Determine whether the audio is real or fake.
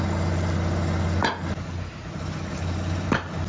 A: real